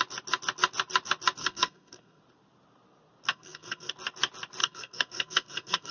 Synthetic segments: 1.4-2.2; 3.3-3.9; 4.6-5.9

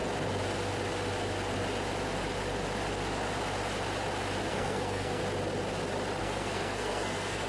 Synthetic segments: 4.5-5.2; 6.2-7.5

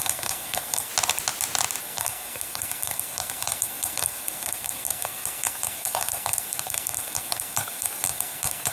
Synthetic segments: 0.0-0.9; 1.8-8.7